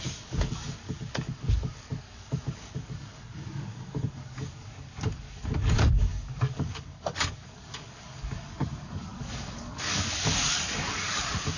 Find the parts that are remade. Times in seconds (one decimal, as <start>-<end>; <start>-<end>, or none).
0.0-11.6